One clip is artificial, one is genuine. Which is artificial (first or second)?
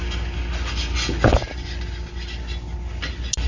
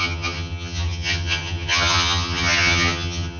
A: second